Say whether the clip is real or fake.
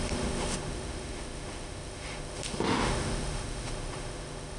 fake